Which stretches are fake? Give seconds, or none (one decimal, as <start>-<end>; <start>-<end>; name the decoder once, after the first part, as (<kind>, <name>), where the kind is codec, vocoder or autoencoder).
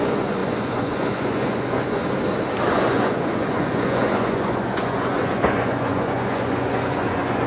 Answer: 0.0-2.0 (vocoder, Vocos); 2.7-7.5